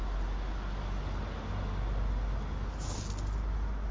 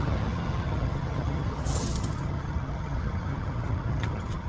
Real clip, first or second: first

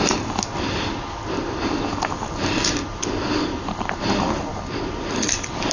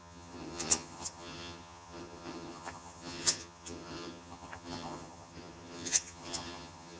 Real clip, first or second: first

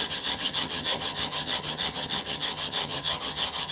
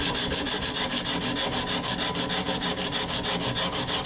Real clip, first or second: second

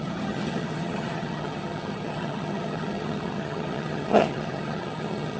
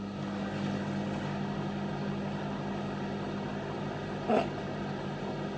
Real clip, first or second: second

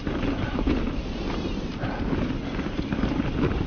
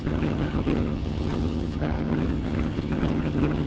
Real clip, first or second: first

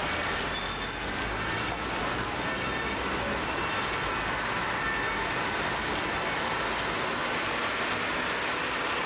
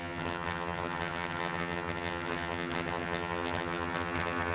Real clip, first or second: first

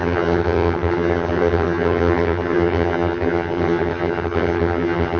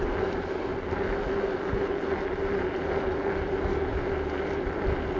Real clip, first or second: second